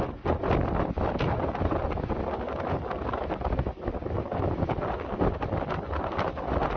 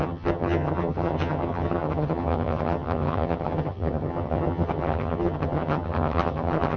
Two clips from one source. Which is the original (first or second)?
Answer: first